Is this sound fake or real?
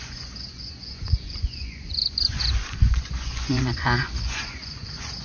fake